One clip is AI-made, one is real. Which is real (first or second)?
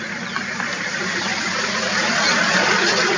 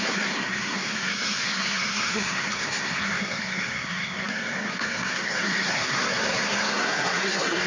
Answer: first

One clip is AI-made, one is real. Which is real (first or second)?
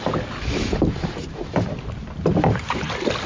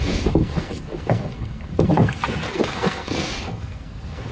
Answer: first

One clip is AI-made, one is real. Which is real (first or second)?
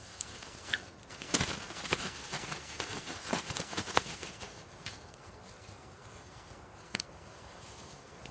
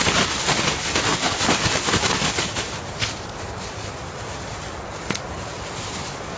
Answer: second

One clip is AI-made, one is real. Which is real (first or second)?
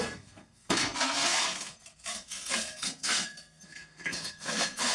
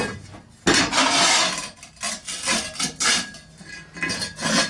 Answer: second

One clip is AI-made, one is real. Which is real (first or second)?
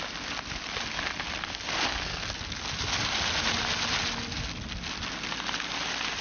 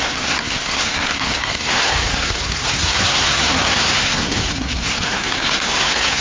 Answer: first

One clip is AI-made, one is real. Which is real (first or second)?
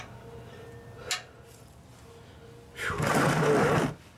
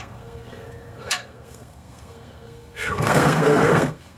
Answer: first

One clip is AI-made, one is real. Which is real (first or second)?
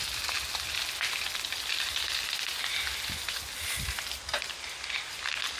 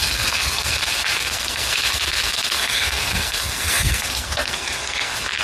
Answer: first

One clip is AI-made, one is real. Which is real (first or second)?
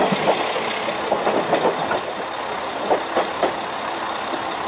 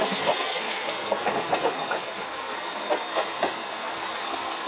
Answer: first